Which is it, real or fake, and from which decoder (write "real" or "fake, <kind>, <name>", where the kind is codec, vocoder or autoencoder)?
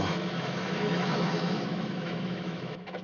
fake, autoencoder, DAC-VAE